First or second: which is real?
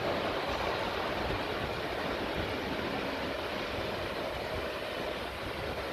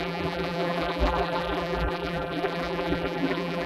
first